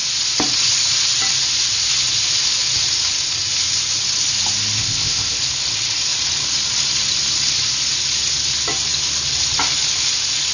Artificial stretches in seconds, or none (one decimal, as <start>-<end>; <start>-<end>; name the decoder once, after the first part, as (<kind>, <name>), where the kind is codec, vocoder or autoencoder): 4.8-5.4 (codec, ZipCodec)